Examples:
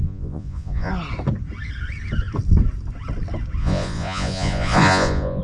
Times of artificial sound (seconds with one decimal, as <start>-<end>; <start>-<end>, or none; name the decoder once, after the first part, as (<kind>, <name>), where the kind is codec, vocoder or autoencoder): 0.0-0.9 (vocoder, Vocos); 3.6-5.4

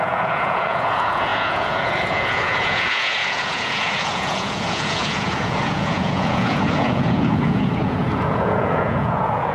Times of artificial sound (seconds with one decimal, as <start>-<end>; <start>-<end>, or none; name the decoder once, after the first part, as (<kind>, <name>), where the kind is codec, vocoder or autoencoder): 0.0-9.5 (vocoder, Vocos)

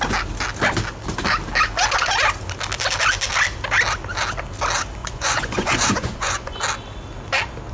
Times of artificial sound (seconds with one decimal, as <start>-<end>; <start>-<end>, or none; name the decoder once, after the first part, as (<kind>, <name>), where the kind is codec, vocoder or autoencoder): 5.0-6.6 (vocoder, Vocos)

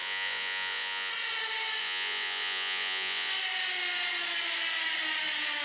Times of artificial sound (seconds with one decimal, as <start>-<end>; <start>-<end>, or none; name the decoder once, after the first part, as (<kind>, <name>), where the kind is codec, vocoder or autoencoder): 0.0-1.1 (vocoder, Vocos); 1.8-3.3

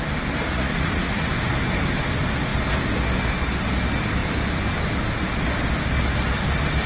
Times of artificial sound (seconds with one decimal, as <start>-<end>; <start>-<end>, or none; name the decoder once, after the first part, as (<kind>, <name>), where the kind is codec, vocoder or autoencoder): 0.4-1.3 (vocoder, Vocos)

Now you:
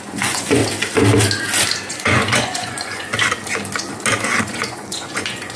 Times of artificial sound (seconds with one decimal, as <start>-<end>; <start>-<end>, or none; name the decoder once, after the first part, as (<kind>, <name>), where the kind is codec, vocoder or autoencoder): 0.0-0.6 (vocoder, Vocos); 1.9-3.1; 4.4-5.6

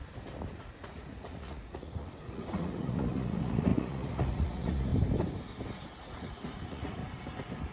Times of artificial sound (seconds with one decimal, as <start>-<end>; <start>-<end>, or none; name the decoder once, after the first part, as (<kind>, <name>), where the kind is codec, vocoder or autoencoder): 0.5-4.9 (vocoder, Vocos); 6.1-7.0